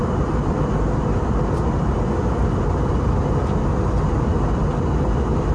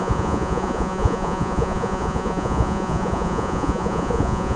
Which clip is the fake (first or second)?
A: second